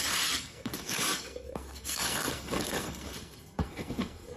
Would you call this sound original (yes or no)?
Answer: no